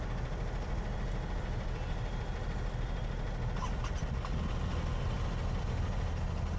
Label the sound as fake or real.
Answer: real